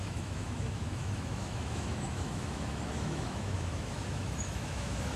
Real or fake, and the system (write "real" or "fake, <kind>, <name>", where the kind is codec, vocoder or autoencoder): fake, autoencoder, DAC-VAE